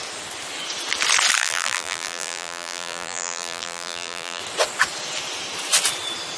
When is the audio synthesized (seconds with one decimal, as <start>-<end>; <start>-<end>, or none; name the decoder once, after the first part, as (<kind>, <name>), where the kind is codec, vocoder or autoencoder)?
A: 1.4-4.4 (vocoder, BigVGAN v2)